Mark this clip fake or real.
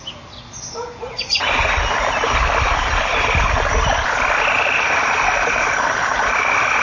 real